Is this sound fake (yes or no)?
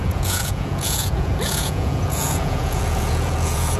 yes